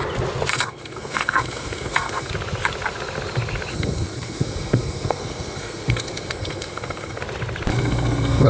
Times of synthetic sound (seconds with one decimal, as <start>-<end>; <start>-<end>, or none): 0.5-2.3; 3.7-7.2; 7.7-8.5